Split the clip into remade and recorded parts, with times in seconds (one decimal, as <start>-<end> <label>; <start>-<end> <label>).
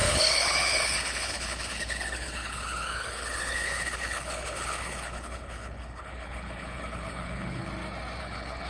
0.0-7.7 remade; 7.7-8.2 recorded; 8.2-8.7 remade